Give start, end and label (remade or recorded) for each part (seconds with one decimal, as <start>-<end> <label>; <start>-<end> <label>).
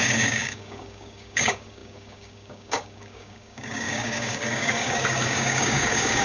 0.0-6.2 remade